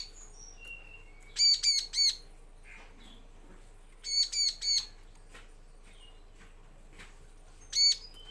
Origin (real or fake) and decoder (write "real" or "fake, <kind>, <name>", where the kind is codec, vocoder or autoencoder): real